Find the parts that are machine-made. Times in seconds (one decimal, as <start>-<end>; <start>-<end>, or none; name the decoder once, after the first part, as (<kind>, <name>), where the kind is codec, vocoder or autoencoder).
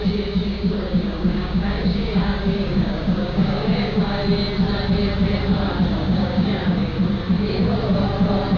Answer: 0.0-4.2 (codec, DAC); 5.9-6.9